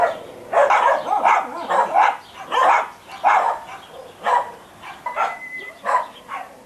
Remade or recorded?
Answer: recorded